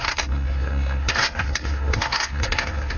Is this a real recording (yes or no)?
no